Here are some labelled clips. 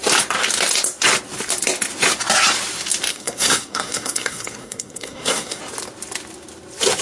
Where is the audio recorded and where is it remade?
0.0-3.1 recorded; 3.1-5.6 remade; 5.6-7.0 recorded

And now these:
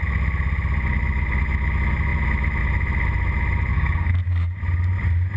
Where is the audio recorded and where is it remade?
0.0-3.7 recorded; 3.7-4.6 remade; 4.6-5.4 recorded

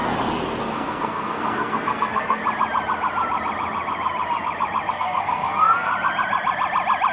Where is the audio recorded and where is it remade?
0.0-0.6 recorded; 0.6-2.4 remade; 2.4-4.9 recorded; 4.9-5.9 remade; 5.9-7.1 recorded

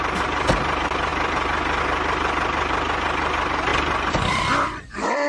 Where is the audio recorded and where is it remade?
0.0-5.3 recorded